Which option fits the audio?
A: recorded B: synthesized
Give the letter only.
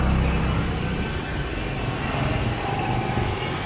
A